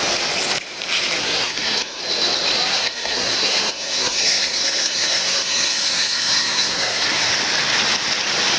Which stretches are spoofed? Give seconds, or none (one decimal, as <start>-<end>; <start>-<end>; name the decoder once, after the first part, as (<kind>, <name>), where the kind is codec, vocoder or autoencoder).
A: 1.2-2.0 (codec, SNAC); 2.7-7.3

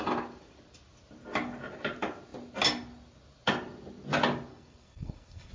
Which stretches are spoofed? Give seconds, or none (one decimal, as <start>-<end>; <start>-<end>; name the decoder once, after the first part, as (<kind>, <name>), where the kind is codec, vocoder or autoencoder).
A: 4.5-5.5 (codec, SNAC)

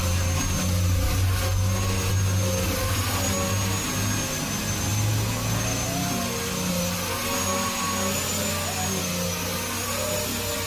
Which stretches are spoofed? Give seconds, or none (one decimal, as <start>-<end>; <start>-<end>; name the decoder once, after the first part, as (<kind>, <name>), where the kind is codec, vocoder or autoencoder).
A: none

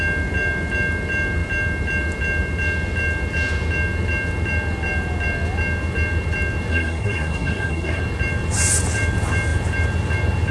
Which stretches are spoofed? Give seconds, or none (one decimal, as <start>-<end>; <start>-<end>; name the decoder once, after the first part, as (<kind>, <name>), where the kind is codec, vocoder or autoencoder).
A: 6.7-8.0 (codec, SNAC)